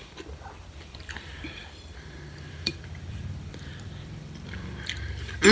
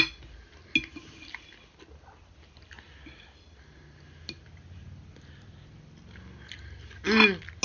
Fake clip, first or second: first